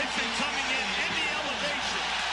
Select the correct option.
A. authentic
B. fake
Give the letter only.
A